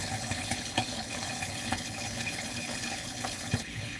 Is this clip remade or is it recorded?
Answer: remade